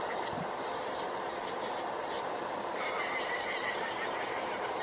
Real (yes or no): no